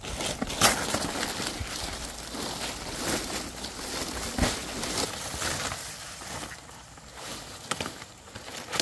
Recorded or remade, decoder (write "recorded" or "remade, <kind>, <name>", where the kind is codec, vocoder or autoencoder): recorded